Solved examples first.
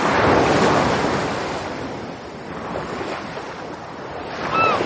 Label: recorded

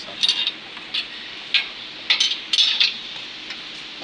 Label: recorded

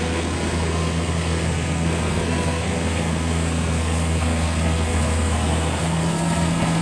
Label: remade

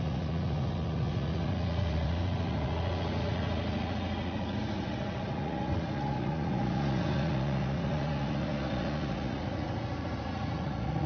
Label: remade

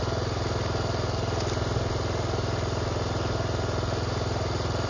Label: recorded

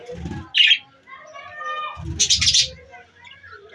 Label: recorded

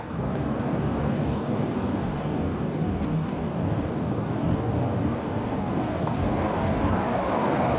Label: remade